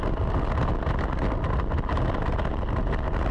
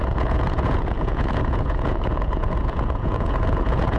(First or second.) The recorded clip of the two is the first